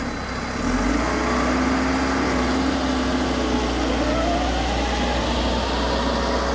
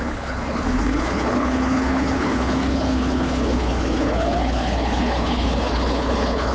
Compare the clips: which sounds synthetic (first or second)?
second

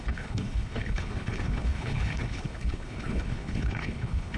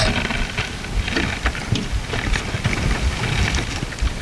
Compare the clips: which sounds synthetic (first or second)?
first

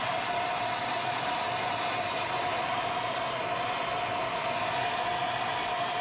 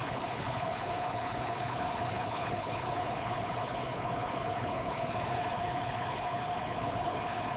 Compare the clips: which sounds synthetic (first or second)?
second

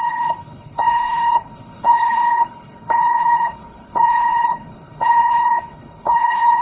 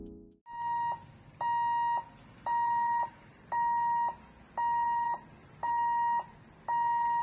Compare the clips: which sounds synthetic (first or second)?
first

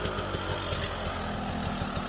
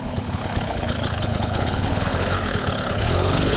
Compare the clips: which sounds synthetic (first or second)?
second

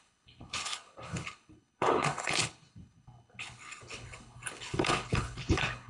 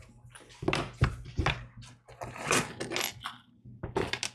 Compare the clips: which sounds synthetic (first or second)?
first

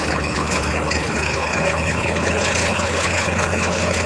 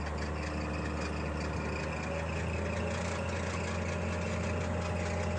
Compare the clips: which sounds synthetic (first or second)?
first